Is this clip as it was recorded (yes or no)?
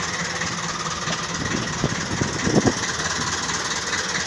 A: yes